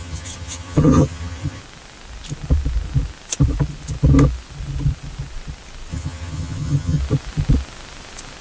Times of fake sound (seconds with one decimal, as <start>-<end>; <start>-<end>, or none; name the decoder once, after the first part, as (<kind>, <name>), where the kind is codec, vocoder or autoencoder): 0.0-1.6 (vocoder, HiFi-GAN); 5.9-7.0